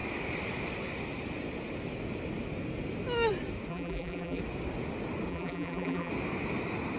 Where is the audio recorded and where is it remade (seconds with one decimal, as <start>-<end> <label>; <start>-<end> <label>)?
0.0-3.7 recorded; 3.7-4.4 remade; 4.4-5.3 recorded; 5.3-6.1 remade; 6.1-7.0 recorded